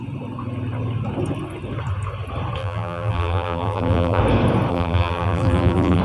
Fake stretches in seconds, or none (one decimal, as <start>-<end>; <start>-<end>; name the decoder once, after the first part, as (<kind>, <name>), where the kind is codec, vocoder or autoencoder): 2.6-4.2 (vocoder, BigVGAN v2); 4.7-6.0